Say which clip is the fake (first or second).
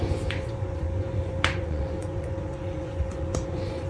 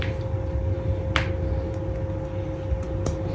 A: first